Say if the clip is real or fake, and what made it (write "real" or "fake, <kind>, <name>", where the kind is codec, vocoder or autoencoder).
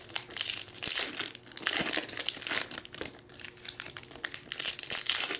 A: real